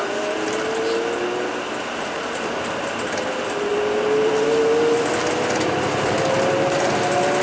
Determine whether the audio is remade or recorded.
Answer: recorded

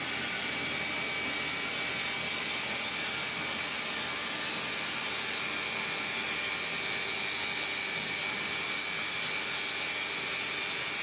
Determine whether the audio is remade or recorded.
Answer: recorded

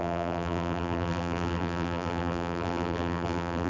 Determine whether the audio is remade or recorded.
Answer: remade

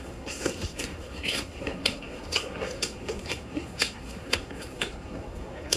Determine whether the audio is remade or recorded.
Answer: remade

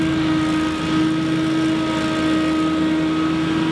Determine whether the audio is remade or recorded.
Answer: recorded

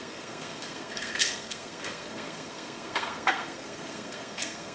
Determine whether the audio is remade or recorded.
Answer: remade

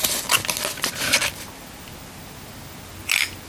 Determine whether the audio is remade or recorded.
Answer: recorded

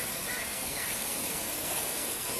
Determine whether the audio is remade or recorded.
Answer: remade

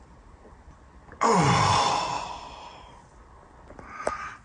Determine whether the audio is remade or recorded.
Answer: recorded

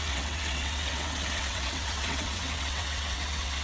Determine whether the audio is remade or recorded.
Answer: remade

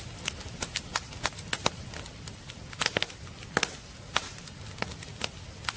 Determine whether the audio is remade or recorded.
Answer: recorded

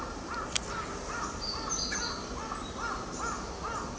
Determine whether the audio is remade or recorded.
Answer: recorded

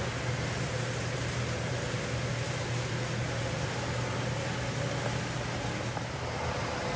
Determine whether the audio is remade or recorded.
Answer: recorded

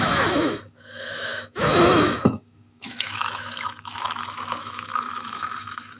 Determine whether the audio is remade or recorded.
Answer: remade